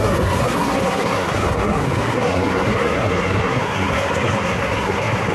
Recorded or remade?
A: remade